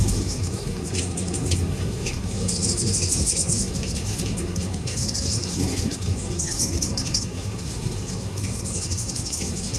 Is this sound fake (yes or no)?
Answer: yes